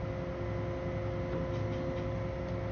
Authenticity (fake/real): real